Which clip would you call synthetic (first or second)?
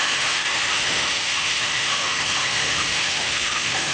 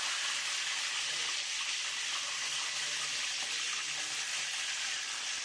first